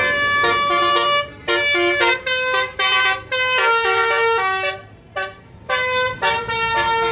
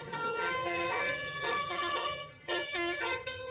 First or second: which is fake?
second